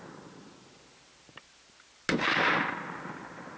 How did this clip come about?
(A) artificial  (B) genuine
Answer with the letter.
B